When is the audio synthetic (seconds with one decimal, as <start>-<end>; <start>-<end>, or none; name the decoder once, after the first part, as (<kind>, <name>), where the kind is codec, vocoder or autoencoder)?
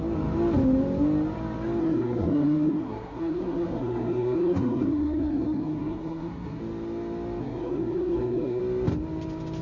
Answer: 1.8-6.6 (codec, SNAC); 7.4-8.6